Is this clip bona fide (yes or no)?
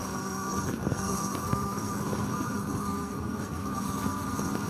no